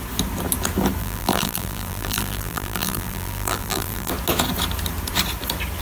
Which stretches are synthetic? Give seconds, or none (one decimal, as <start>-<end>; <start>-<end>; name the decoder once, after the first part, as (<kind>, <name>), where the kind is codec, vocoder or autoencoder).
1.0-4.1 (vocoder, BigVGAN v2)